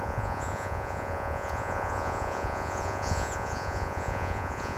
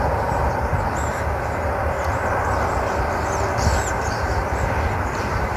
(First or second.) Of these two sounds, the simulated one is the first